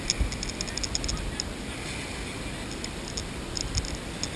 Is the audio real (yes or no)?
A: yes